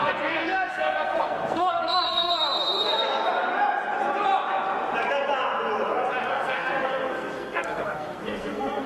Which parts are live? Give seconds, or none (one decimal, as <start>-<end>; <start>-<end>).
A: 2.3-6.3

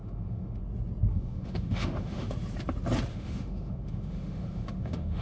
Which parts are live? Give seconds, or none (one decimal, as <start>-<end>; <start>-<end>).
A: 0.6-1.1; 2.3-3.1

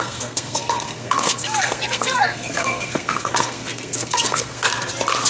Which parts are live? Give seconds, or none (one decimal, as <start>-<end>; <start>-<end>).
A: 4.7-5.3

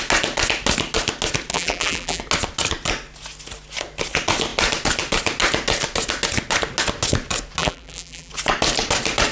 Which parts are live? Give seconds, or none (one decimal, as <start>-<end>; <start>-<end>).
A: 0.0-1.5; 2.2-7.6; 8.3-9.3

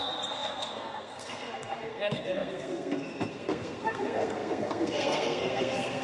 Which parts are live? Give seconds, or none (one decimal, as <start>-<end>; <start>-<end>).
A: none